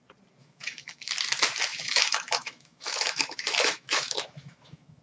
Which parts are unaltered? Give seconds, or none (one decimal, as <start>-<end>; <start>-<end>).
0.0-0.4; 1.1-1.7